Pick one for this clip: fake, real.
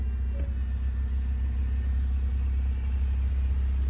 real